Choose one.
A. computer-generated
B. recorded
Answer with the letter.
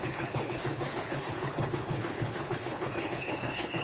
A